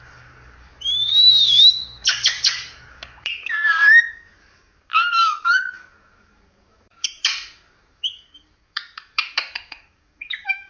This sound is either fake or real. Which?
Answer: fake